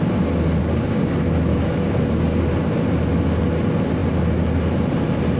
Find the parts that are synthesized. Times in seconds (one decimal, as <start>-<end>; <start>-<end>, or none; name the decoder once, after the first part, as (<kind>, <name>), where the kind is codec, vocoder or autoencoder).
0.6-1.1 (codec, DAC); 1.5-2.5